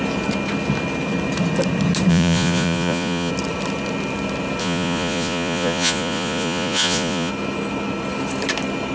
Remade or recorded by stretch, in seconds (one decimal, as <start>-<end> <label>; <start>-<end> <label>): 0.0-2.1 recorded; 2.1-3.3 remade; 3.3-4.6 recorded; 4.6-7.3 remade; 7.3-8.9 recorded